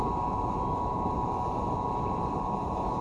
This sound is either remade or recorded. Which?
remade